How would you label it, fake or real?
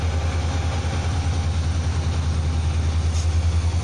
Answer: real